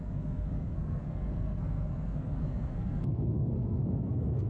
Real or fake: fake